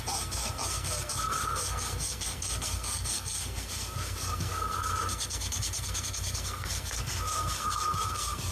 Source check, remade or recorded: remade